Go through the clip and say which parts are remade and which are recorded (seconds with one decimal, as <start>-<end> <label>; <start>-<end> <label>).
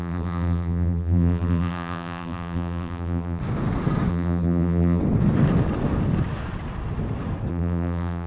0.0-3.4 remade; 3.4-4.1 recorded; 4.1-5.0 remade; 5.0-7.5 recorded; 7.5-8.3 remade